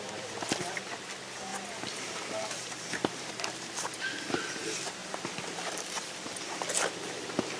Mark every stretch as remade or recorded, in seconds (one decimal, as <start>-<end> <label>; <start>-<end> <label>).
0.0-1.5 recorded; 1.5-4.0 remade; 4.0-5.0 recorded; 5.0-6.1 remade; 6.1-7.6 recorded